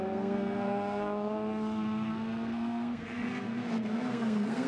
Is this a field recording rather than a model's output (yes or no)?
no